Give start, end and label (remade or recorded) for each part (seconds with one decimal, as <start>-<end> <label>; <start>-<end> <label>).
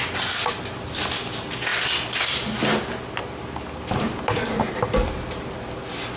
0.0-6.2 recorded